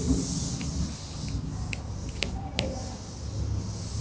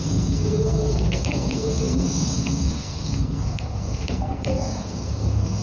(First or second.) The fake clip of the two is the second